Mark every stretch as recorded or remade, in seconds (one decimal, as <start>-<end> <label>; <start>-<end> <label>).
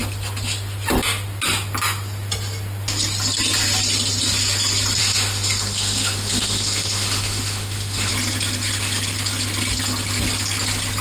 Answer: 0.0-5.0 recorded; 5.0-8.1 remade; 8.1-11.0 recorded